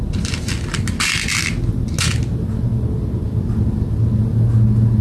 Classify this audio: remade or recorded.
recorded